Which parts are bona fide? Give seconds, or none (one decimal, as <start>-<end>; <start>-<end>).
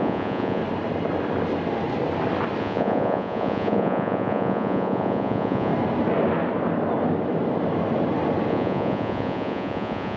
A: 0.6-2.6; 5.7-8.5